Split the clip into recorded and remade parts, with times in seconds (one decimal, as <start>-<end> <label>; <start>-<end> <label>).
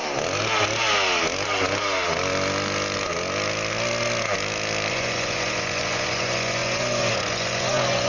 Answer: 0.0-4.9 recorded; 4.9-8.1 remade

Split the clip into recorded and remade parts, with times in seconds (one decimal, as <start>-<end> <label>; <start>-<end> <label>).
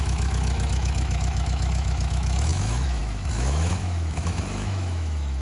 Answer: 0.0-5.4 remade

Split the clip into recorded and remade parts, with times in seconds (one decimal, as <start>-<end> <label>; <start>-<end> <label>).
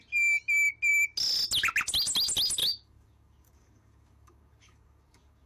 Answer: 0.0-2.6 recorded; 2.6-5.5 remade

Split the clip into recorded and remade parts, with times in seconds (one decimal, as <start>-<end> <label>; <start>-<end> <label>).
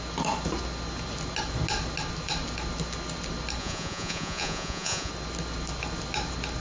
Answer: 0.0-3.6 recorded; 3.6-5.1 remade; 5.1-6.6 recorded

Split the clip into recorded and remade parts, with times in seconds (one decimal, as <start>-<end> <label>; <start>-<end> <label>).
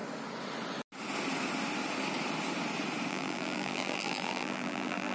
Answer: 0.0-3.1 recorded; 3.1-5.1 remade